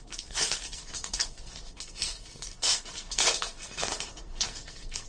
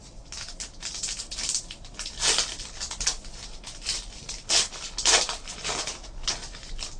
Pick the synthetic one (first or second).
first